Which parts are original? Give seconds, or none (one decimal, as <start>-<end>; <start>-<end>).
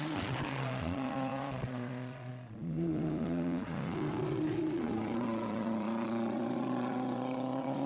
none